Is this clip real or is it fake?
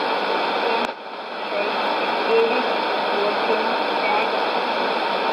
real